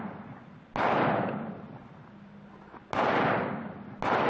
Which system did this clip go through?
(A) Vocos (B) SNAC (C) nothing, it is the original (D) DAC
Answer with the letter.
C